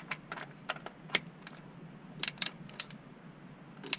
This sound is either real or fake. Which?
real